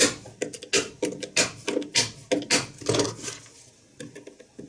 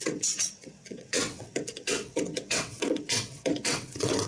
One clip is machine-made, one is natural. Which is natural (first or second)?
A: first